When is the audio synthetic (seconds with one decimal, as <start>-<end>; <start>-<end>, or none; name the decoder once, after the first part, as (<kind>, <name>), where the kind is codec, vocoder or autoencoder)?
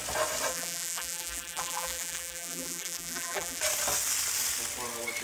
0.5-3.6 (vocoder, BigVGAN v2)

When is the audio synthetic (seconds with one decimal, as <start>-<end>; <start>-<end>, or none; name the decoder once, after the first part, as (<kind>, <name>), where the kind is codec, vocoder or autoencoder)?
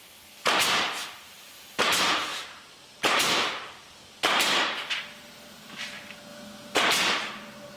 1.0-1.5 (vocoder, BigVGAN v2); 2.3-4.6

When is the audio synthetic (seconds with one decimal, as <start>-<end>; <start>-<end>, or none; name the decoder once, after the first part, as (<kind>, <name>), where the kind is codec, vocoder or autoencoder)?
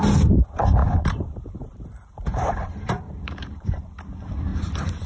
0.8-3.9 (vocoder, BigVGAN v2); 4.5-5.1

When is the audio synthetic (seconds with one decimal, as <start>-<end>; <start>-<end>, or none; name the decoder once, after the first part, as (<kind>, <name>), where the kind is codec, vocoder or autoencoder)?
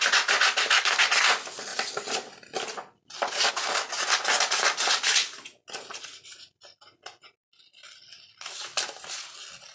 1.7-3.5 (vocoder, BigVGAN v2)